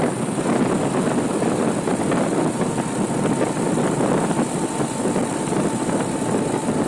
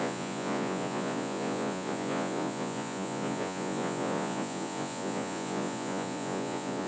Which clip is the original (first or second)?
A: first